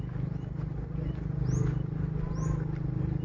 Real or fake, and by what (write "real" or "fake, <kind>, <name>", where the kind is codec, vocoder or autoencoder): real